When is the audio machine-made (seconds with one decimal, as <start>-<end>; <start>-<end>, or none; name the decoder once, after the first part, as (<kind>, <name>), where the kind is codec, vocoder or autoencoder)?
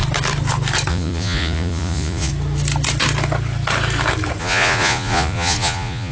0.9-2.3 (vocoder, Vocos); 4.4-6.1